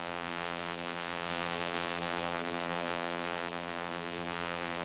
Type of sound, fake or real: fake